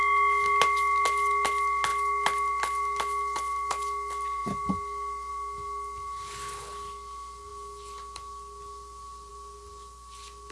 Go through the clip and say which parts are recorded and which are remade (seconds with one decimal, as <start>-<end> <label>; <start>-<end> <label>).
0.0-10.5 recorded

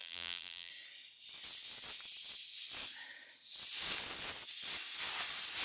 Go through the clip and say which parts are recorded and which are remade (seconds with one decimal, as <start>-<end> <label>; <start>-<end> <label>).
0.0-0.7 remade; 0.7-5.6 recorded

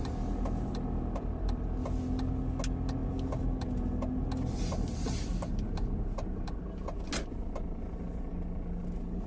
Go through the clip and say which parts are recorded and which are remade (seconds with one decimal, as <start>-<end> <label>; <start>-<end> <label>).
0.0-9.3 recorded

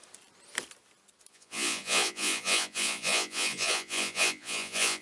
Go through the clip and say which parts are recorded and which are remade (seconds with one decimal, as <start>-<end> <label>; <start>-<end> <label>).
0.0-1.3 recorded; 1.3-5.0 remade

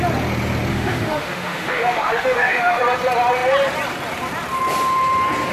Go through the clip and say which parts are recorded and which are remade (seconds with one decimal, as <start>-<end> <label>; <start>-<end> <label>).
0.0-0.7 recorded; 0.7-2.8 remade; 2.8-5.5 recorded

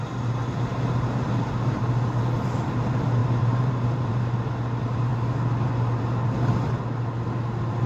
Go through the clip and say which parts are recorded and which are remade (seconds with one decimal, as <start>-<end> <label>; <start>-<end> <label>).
0.0-0.7 recorded; 0.7-1.8 remade; 1.8-3.2 recorded; 3.2-4.2 remade; 4.2-7.9 recorded